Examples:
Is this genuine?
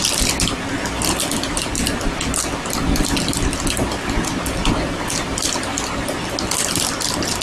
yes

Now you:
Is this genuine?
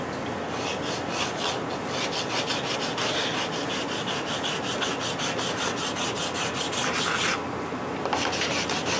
yes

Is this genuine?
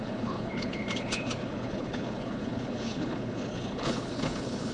no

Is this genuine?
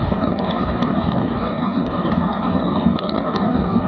no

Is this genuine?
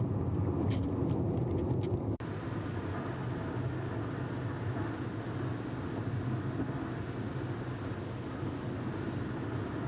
yes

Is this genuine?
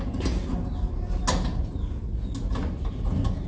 yes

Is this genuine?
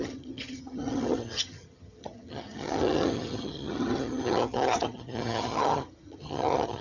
no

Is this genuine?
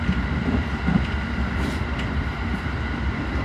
yes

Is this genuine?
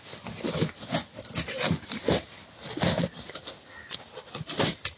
yes